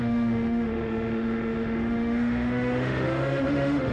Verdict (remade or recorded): remade